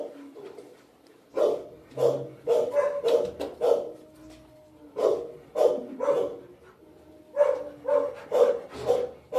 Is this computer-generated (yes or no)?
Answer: no